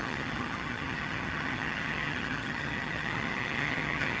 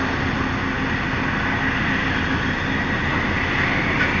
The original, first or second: second